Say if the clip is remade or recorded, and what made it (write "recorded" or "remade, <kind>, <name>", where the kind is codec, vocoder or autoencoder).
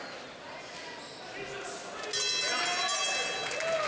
recorded